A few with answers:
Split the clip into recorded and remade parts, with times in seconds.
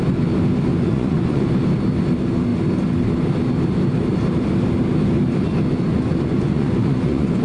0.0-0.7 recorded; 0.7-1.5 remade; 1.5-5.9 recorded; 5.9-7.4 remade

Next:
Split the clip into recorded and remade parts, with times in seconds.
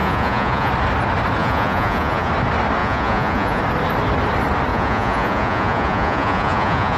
0.0-0.7 remade; 0.7-1.4 recorded; 1.4-2.3 remade; 2.3-2.8 recorded; 2.8-3.6 remade; 3.6-4.7 recorded; 4.7-7.0 remade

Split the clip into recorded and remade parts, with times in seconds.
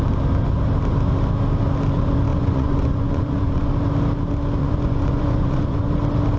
0.0-2.3 recorded; 2.3-3.7 remade; 3.7-4.6 recorded; 4.6-5.9 remade; 5.9-6.4 recorded